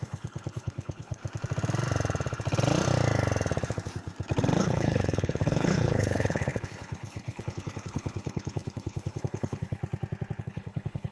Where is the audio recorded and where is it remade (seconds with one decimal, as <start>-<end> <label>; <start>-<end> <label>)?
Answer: 0.0-1.2 remade; 1.2-4.6 recorded; 4.6-9.8 remade; 9.8-10.4 recorded; 10.4-11.1 remade